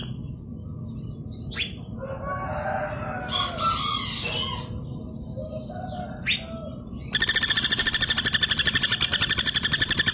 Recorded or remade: recorded